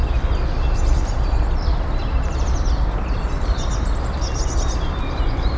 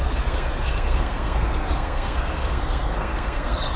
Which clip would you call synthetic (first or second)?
second